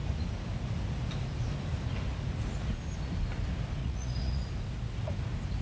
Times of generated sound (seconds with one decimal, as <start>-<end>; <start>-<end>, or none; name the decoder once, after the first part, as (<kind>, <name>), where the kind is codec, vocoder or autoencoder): 3.8-4.5 (vocoder, Vocos)